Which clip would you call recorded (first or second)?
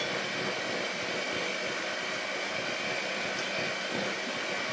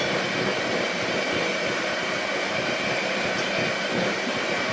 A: first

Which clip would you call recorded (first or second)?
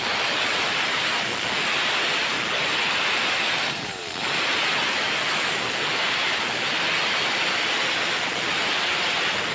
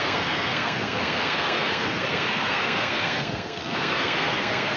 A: first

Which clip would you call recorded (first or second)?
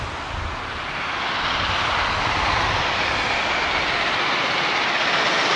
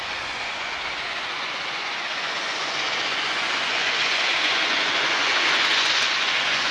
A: first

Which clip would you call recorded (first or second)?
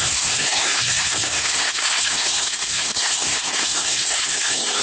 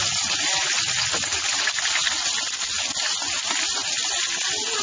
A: second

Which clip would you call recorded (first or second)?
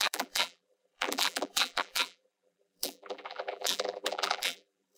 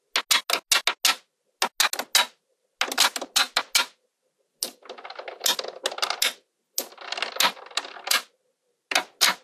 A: second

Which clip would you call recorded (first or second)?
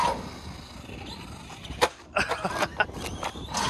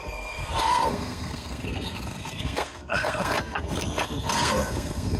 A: first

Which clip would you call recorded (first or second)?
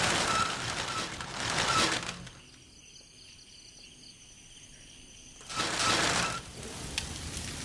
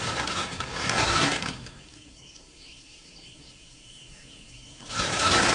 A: first